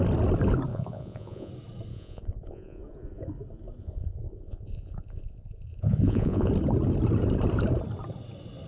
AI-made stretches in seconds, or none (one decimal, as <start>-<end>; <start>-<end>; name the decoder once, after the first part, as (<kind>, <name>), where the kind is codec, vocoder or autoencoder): 0.7-1.5 (vocoder, Vocos); 1.9-2.8; 3.8-6.5